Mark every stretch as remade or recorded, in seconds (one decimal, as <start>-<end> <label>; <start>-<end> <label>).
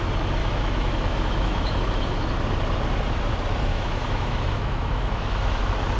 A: 0.0-0.4 recorded; 0.4-1.8 remade; 1.8-3.7 recorded; 3.7-5.6 remade; 5.6-6.0 recorded